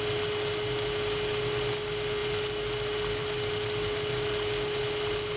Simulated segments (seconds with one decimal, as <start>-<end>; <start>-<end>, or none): none